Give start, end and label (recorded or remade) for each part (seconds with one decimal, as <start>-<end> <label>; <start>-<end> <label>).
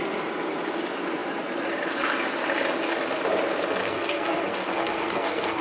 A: 0.0-3.8 recorded; 3.8-5.6 remade